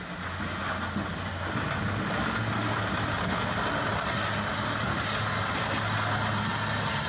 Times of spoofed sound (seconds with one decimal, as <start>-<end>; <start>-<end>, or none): none